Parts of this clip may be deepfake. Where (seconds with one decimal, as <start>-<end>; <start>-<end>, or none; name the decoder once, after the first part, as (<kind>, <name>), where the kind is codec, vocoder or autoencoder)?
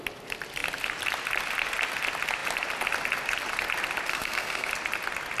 4.1-4.7 (codec, SNAC)